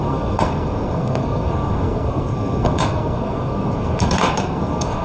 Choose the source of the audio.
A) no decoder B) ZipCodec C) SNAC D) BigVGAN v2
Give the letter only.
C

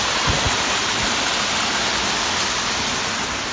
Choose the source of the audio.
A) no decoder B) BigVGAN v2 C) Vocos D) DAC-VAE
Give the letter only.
A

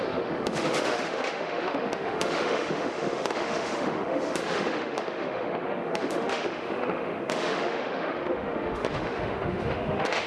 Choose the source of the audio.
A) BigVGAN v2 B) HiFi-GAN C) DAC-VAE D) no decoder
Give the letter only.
C